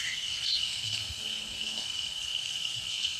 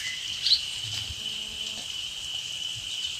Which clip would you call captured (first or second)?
second